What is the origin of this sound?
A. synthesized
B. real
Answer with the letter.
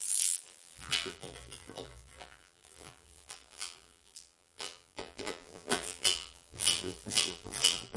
A